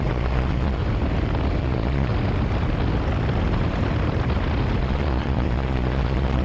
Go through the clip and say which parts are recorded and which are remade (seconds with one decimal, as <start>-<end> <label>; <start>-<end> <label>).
0.0-0.8 remade; 0.8-1.6 recorded; 1.6-2.1 remade; 2.1-4.8 recorded; 4.8-6.4 remade